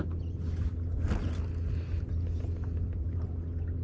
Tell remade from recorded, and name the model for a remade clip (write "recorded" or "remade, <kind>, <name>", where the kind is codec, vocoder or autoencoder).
recorded